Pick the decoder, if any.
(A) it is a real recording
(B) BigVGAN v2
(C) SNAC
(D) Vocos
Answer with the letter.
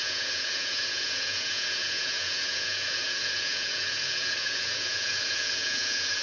D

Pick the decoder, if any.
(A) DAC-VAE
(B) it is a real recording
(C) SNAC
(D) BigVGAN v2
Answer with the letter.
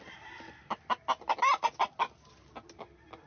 B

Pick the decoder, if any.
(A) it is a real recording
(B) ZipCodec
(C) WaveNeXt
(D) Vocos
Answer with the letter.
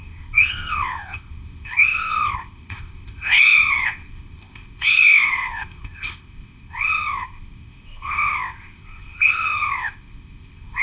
B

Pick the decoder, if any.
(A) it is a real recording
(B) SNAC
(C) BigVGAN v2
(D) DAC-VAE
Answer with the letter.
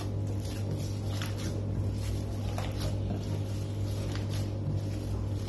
A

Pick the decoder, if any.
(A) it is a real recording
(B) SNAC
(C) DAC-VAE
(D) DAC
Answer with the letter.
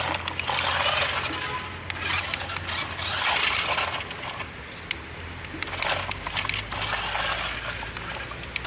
A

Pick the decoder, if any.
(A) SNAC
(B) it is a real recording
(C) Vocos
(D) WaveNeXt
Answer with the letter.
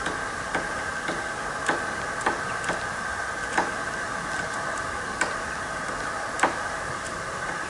B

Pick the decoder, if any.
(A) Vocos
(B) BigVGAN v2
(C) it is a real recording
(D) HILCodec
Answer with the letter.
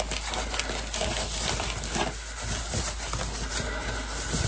C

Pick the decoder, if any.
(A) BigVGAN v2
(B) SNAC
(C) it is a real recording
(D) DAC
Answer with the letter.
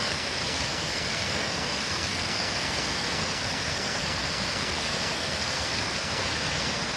B